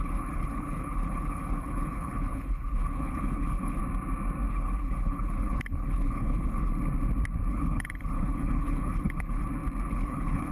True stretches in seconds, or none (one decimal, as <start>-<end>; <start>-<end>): 3.8-4.5; 6.7-7.5; 9.4-9.9